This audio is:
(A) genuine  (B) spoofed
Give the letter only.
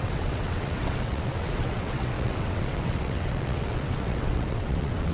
B